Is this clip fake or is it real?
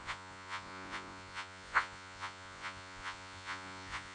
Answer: fake